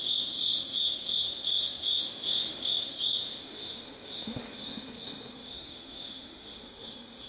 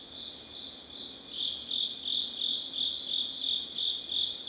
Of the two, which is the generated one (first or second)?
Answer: first